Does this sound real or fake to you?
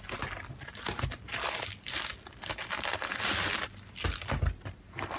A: real